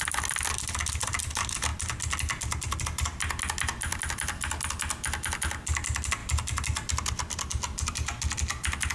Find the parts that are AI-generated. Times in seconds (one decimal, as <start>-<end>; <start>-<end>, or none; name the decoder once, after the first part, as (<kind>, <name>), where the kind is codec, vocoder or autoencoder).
none